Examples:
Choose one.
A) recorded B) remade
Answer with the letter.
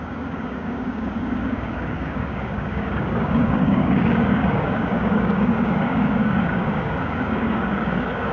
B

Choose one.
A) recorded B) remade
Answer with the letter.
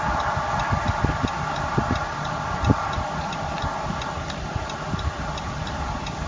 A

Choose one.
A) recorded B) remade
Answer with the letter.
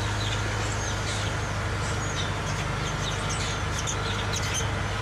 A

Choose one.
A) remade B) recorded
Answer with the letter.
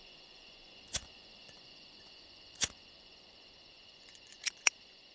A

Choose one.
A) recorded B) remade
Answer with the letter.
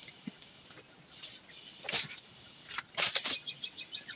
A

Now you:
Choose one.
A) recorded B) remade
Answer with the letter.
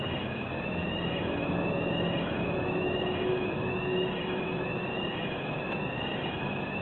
B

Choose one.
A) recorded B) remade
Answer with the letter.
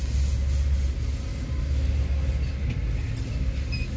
A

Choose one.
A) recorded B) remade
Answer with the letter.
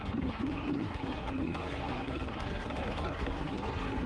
B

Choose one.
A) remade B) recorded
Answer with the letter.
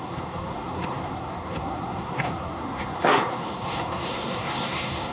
A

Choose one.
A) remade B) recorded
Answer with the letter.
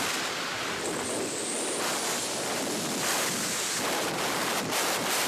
A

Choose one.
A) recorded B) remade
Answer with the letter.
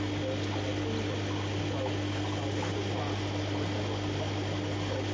A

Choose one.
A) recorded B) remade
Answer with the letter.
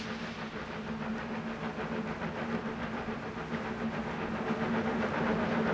A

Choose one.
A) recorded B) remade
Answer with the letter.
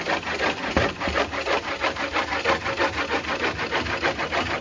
A